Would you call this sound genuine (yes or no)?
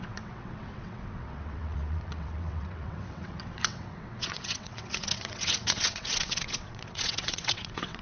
no